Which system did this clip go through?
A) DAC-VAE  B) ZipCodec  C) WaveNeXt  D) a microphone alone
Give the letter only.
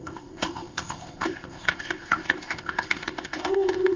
B